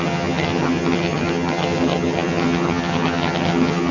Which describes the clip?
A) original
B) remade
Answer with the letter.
B